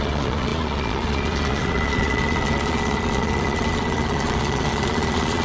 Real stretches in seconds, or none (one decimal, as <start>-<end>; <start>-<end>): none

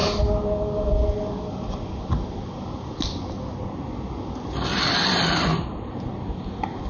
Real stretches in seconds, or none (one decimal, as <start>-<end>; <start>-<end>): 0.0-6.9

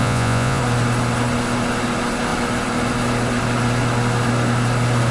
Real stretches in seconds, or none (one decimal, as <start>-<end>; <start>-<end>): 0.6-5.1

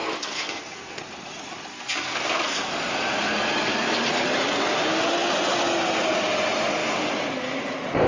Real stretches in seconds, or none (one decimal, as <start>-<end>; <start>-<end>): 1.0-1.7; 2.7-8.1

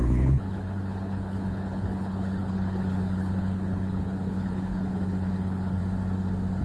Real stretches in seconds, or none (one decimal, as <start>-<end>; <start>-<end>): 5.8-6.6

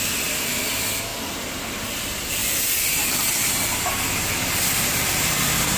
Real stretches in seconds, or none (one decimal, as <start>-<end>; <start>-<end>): 1.1-2.0